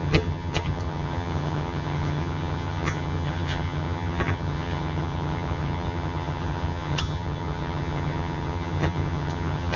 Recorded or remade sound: remade